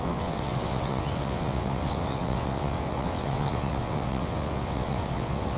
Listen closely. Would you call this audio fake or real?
fake